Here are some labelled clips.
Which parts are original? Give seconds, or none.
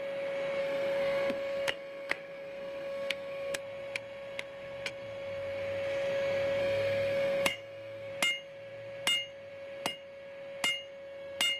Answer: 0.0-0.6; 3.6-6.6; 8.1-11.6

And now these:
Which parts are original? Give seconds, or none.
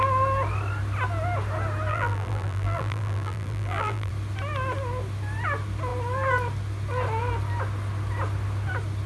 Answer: 0.0-1.9; 4.1-9.1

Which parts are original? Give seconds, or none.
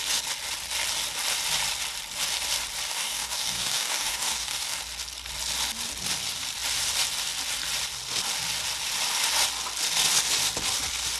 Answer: 0.0-2.9; 4.8-11.2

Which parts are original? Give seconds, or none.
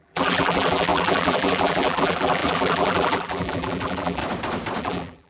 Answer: 4.2-4.8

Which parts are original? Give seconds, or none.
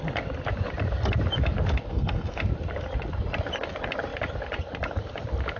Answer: 0.0-1.9; 2.4-5.6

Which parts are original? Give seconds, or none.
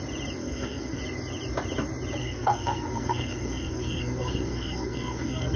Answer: 0.0-0.4; 1.0-2.2